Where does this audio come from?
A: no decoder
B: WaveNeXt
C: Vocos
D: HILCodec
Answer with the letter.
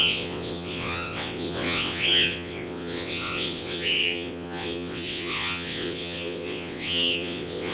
B